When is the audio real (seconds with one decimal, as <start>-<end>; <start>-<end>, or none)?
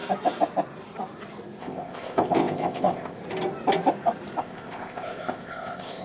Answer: 0.0-1.6; 3.2-4.4